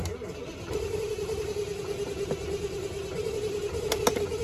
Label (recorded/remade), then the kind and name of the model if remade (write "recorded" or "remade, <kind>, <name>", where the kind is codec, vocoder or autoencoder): recorded